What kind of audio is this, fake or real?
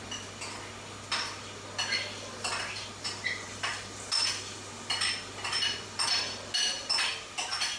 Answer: real